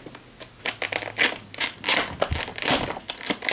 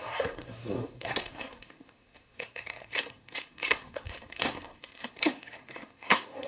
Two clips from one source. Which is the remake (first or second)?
second